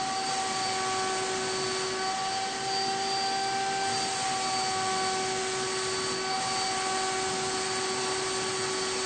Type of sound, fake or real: real